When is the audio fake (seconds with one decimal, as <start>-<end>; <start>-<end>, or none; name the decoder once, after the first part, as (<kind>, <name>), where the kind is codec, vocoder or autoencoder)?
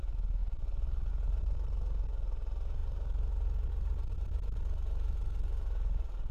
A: none